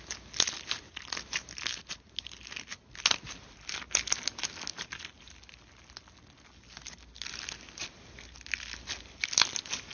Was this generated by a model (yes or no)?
no